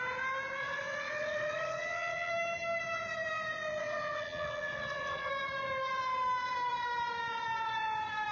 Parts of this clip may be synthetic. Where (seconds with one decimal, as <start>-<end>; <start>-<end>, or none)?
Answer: 0.6-2.3; 3.8-5.3